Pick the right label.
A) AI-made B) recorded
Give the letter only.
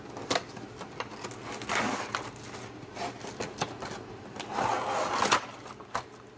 B